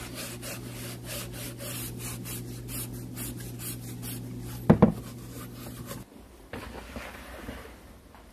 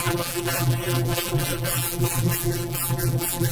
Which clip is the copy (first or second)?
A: second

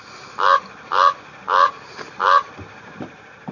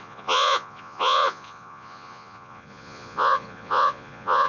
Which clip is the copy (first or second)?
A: second